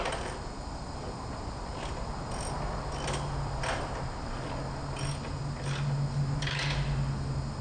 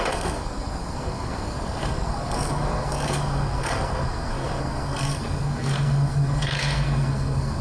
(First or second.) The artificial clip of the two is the second